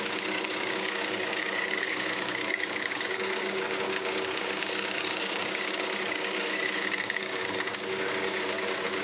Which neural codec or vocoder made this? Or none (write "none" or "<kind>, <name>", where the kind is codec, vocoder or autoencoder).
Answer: codec, DAC